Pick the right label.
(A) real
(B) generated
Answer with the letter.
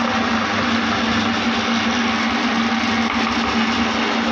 A